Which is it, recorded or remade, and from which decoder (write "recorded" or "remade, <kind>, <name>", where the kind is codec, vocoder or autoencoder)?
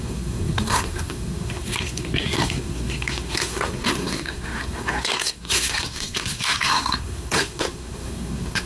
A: remade, codec, SNAC